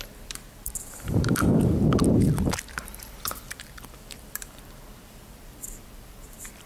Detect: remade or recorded remade